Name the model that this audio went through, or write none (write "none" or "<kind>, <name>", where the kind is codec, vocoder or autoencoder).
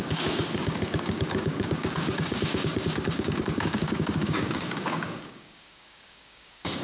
codec, DAC